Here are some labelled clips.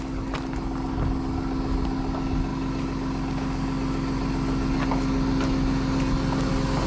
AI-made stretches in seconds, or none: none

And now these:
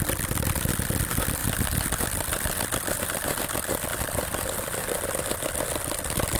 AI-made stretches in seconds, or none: 3.9-5.1

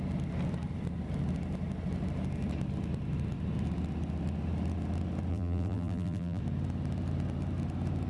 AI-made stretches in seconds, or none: 5.3-6.4

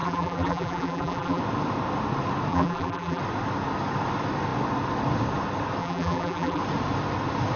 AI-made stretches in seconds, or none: 0.0-1.4; 2.5-3.2; 5.8-6.6

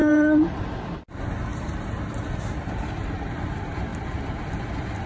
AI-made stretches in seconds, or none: 0.0-0.6; 1.5-3.5; 3.9-4.5